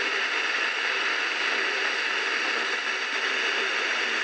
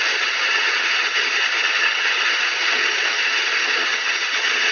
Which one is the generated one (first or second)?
second